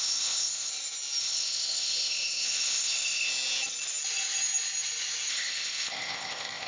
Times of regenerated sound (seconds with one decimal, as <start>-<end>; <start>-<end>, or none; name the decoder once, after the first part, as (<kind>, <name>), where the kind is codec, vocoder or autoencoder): 0.0-0.7 (codec, ZipCodec); 1.2-3.3; 5.3-6.7